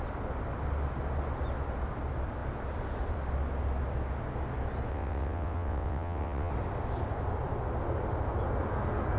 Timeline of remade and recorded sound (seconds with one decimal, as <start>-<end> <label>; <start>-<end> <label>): 0.0-4.9 recorded; 4.9-6.5 remade; 6.5-9.2 recorded